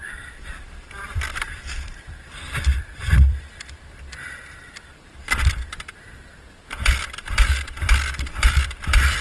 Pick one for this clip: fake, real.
fake